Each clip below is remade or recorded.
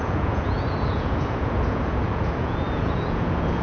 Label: remade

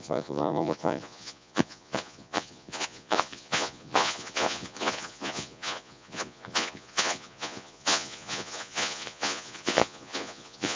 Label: remade